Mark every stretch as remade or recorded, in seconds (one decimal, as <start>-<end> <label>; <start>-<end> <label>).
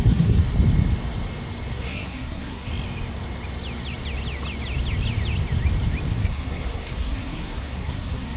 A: 0.0-0.4 remade; 0.4-1.7 recorded; 1.7-2.7 remade; 2.7-6.1 recorded; 6.1-8.4 remade